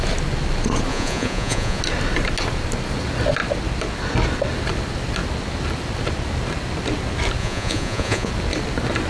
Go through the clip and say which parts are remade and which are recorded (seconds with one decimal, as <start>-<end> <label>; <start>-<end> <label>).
0.0-0.9 recorded; 0.9-1.8 remade; 1.8-7.4 recorded; 7.4-8.3 remade; 8.3-9.1 recorded